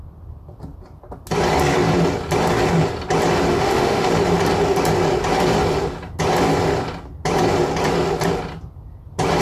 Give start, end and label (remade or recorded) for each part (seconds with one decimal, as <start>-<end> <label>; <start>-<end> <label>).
0.0-3.5 recorded; 3.5-4.1 remade; 4.1-9.4 recorded

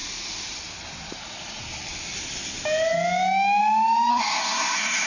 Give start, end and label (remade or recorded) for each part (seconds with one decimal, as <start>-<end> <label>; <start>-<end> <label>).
0.0-4.1 recorded; 4.1-5.1 remade